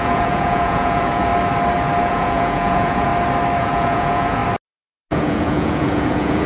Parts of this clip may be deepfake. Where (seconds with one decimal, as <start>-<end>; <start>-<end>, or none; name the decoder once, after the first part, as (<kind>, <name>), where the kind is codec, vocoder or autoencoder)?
0.0-1.3 (vocoder, Vocos); 2.0-3.1; 3.6-4.4; 5.1-6.5